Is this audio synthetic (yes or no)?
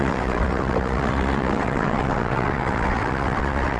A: yes